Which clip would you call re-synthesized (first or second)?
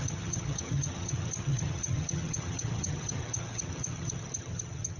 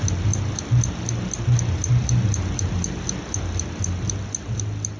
first